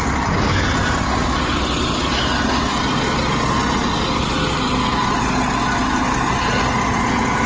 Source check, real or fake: real